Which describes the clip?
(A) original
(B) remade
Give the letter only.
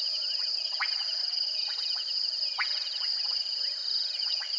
A